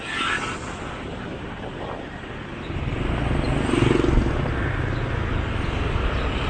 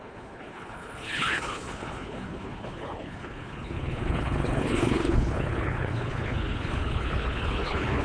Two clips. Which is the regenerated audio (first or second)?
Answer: second